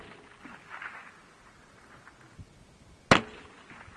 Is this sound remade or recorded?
recorded